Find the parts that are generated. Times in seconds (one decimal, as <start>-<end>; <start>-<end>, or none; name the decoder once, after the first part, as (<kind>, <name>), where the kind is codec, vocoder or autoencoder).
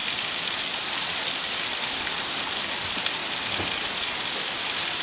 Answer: 0.0-5.0 (vocoder, BigVGAN v2)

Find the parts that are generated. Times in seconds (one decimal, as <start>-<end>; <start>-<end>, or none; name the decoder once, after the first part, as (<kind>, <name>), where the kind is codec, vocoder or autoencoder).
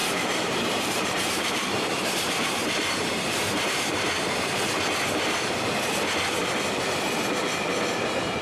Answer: 0.0-4.6 (vocoder, BigVGAN v2)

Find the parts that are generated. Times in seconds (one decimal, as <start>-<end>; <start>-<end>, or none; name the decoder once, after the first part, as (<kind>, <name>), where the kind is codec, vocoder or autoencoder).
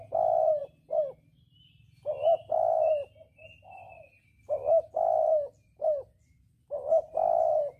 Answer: none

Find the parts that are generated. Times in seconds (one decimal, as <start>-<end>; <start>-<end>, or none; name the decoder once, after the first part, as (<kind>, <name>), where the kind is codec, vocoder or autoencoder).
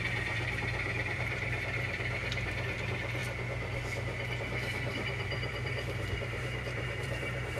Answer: 0.0-2.2 (vocoder, BigVGAN v2); 2.8-3.2; 4.4-7.6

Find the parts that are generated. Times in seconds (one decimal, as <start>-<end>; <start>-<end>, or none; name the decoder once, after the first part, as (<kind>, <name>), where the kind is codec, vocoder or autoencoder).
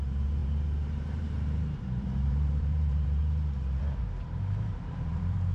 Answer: 0.0-3.2 (vocoder, BigVGAN v2); 3.8-5.5